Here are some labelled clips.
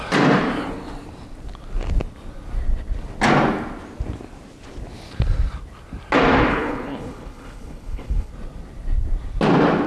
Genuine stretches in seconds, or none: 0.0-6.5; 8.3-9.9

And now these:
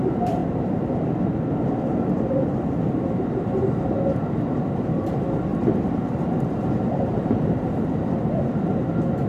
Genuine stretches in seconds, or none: 0.0-5.5; 7.6-9.3

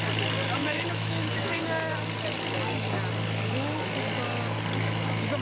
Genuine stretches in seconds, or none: 0.0-0.6; 1.6-5.4

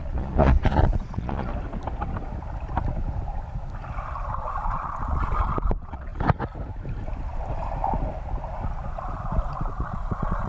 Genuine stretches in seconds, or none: 1.5-4.6; 6.1-9.7

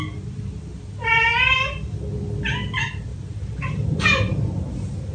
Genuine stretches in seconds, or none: 0.0-3.1

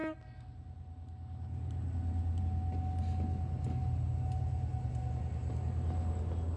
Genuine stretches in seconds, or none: 0.0-6.6